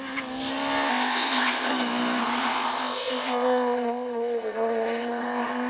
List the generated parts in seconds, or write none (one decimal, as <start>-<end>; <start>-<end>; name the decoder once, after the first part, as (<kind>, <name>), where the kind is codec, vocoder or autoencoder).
0.9-1.7 (codec, ZipCodec); 2.2-5.7